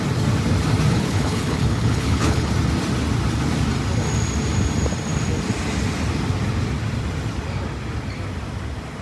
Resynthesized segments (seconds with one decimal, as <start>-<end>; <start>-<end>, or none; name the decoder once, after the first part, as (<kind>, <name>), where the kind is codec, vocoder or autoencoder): 0.9-2.5 (codec, HILCodec)